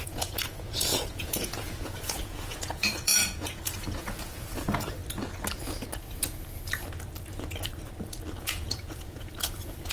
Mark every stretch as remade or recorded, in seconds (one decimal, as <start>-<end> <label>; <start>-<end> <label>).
0.0-5.0 remade; 5.0-8.4 recorded; 8.4-9.9 remade